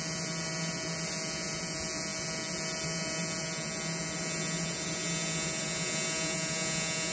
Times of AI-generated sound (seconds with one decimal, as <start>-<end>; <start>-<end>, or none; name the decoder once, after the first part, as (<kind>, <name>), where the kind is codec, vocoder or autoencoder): none

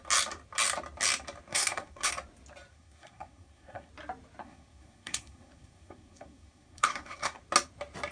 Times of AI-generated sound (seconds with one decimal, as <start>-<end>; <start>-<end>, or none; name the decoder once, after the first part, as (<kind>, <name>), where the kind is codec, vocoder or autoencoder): 1.5-2.1 (codec, SNAC); 2.7-3.9; 4.4-7.4

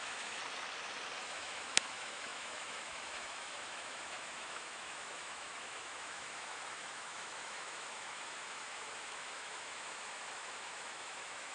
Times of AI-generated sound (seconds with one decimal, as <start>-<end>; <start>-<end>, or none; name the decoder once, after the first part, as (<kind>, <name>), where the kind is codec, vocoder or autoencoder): 0.0-0.4 (autoencoder, DAC-VAE); 1.2-11.5

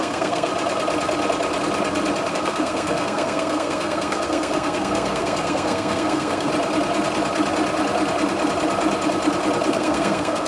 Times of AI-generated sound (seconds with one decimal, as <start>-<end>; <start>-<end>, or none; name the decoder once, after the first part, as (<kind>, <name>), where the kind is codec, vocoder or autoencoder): 0.0-0.5 (codec, SNAC); 2.3-6.5; 9.7-10.5

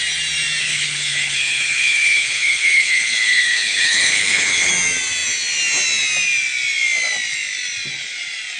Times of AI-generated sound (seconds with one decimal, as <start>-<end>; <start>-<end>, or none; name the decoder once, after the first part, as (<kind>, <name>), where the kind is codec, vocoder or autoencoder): 0.6-4.7 (codec, HILCodec)

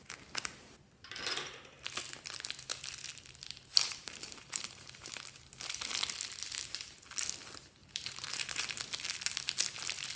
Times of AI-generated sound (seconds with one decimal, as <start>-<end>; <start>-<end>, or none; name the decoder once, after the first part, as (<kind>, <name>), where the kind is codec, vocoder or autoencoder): 3.7-5.1 (vocoder, BigVGAN v2); 7.8-8.8

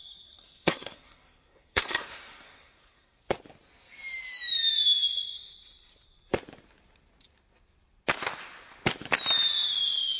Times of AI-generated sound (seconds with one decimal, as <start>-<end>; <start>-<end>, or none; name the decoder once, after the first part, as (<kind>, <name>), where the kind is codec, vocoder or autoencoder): 0.0-3.3 (codec, SNAC)